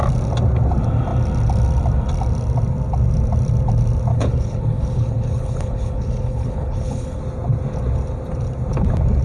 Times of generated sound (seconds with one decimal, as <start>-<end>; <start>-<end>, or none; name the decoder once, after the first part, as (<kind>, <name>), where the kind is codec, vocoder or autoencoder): 4.1-7.2 (codec, HILCodec)